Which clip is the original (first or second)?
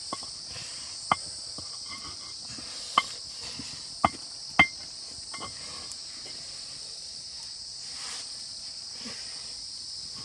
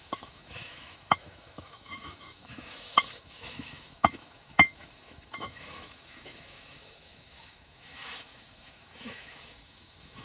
first